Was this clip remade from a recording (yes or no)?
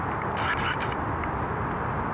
no